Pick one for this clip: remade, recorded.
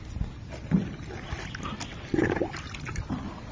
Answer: recorded